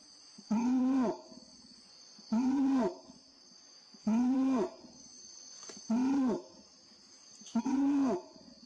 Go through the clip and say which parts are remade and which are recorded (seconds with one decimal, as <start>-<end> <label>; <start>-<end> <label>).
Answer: 0.0-5.7 remade; 5.7-7.5 recorded; 7.5-8.7 remade